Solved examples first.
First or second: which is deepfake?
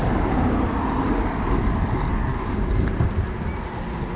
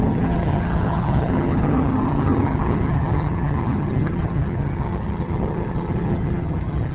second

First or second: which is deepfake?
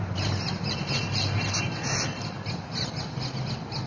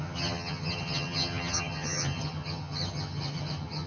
second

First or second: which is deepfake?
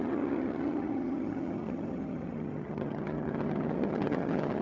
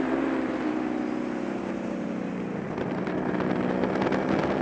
first